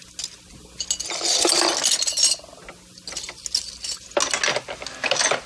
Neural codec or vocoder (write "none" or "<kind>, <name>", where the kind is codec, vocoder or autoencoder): none